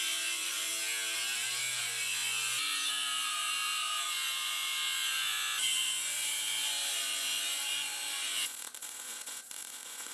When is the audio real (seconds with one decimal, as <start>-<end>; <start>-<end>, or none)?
0.7-1.8